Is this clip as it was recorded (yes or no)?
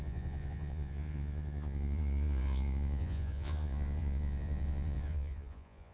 no